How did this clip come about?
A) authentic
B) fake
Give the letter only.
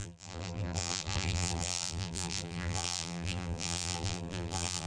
B